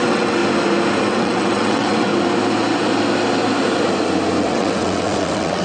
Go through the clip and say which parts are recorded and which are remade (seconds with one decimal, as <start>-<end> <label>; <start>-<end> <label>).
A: 0.0-0.4 remade; 0.4-1.0 recorded; 1.0-2.1 remade; 2.1-4.4 recorded; 4.4-5.6 remade

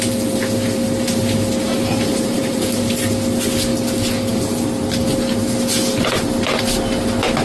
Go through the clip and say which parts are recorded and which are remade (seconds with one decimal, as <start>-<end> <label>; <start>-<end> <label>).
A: 0.0-1.7 recorded; 1.7-2.9 remade; 2.9-7.4 recorded

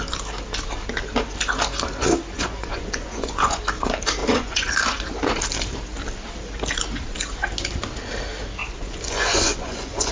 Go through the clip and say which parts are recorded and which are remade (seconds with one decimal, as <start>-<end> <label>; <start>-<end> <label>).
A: 0.0-2.3 recorded; 2.3-3.6 remade; 3.6-4.2 recorded; 4.2-4.7 remade; 4.7-8.6 recorded; 8.6-10.1 remade